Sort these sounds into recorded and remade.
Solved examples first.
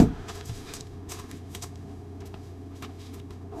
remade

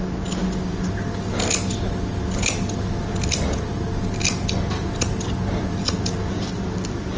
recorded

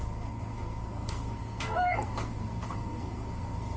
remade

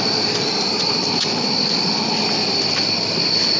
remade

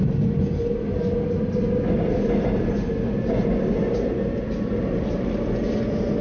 recorded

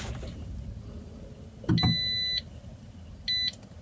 recorded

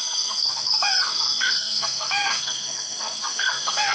remade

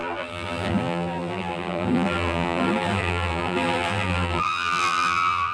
remade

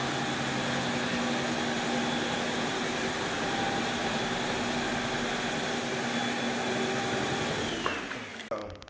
recorded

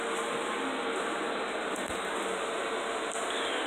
recorded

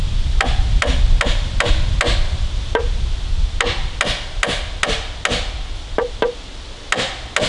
recorded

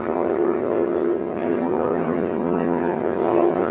remade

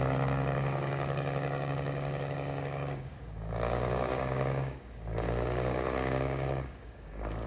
remade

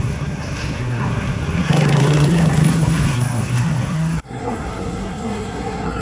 remade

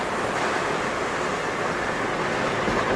recorded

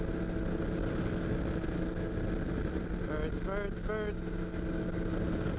recorded